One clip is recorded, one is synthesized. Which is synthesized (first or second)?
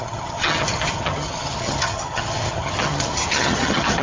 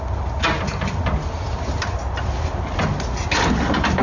first